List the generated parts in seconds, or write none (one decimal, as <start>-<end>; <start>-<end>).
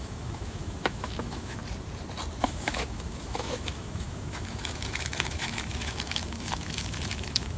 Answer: 0.0-1.6; 2.4-7.6